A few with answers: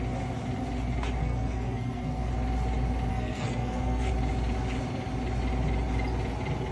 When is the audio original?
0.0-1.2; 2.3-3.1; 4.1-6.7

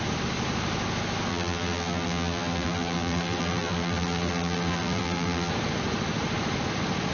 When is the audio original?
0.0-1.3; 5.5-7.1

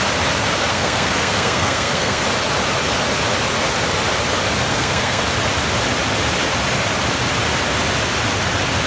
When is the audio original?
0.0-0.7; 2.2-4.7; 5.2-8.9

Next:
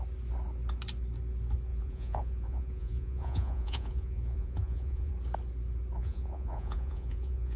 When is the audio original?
0.0-1.7; 5.1-6.0

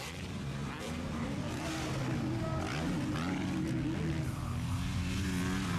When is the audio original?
0.0-5.8